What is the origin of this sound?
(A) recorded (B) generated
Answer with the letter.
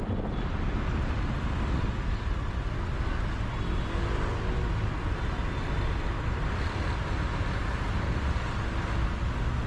A